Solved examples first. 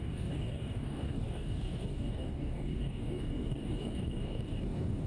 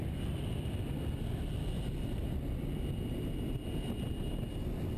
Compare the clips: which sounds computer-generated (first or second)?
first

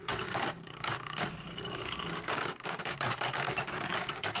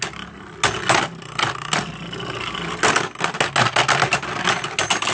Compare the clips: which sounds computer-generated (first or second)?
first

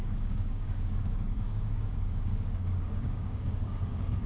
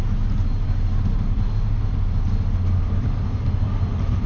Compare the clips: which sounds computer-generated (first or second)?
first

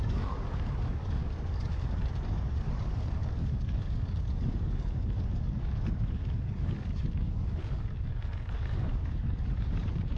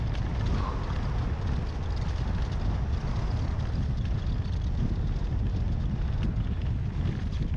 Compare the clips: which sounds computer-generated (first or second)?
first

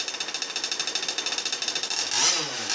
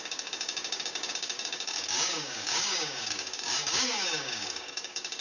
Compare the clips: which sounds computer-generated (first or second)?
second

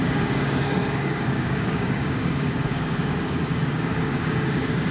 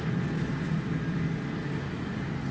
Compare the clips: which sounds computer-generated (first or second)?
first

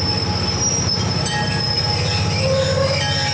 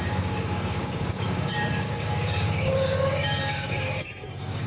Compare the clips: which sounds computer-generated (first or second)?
second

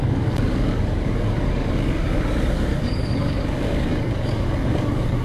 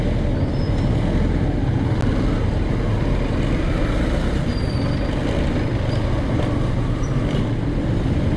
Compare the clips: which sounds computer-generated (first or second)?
first